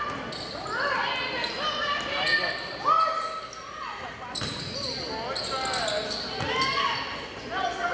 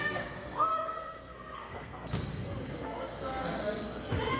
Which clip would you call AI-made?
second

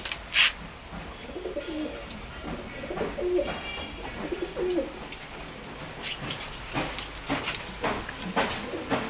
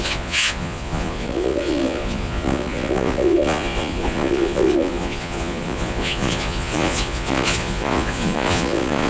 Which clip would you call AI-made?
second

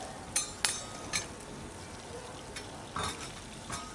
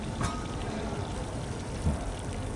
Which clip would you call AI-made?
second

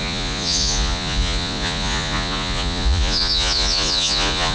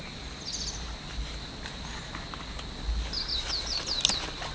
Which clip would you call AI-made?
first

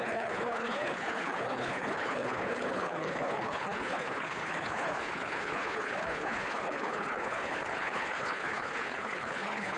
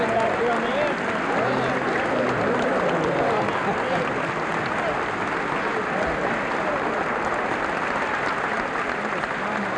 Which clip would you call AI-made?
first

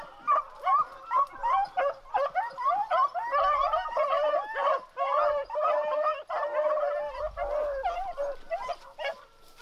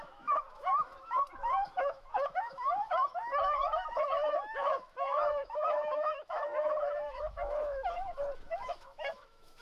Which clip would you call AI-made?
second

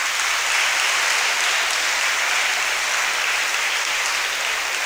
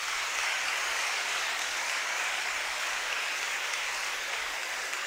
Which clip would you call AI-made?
second